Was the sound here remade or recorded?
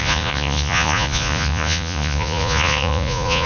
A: remade